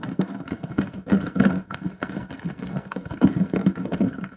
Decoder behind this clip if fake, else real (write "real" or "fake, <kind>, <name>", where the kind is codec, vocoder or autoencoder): fake, codec, SNAC